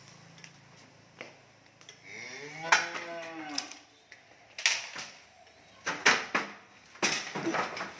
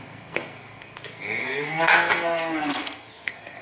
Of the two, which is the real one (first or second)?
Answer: first